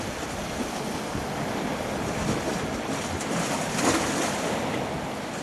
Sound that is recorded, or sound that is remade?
recorded